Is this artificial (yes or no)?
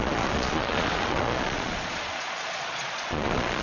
yes